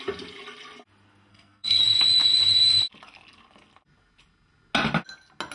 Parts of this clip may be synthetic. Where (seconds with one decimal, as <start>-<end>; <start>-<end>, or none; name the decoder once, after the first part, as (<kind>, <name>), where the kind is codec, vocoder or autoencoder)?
1.3-1.8 (codec, SNAC)